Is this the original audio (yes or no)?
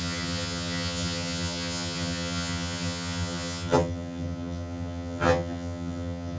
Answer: no